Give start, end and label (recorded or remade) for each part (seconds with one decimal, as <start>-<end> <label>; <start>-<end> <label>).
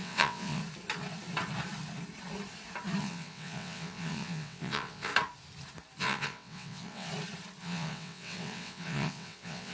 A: 0.0-0.6 remade; 0.6-3.0 recorded; 3.0-5.1 remade; 5.1-6.0 recorded; 6.0-7.1 remade; 7.1-7.6 recorded; 7.6-9.7 remade